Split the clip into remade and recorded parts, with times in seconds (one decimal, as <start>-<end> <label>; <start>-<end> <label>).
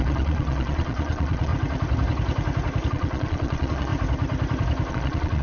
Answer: 0.0-1.5 remade; 1.5-2.9 recorded; 2.9-3.9 remade; 3.9-4.9 recorded; 4.9-5.4 remade